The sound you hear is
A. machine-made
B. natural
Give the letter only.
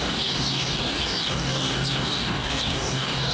A